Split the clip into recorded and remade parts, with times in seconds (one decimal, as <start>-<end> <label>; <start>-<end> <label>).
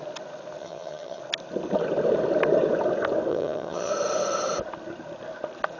0.0-0.6 recorded; 0.6-1.2 remade; 1.2-3.3 recorded; 3.3-3.9 remade; 3.9-5.8 recorded